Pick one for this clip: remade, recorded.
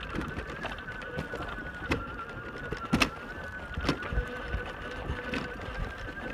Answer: recorded